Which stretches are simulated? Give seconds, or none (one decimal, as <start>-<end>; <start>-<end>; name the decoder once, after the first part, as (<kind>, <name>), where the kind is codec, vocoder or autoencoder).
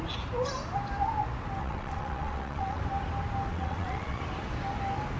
1.6-2.8 (vocoder, WaveNeXt); 3.5-4.2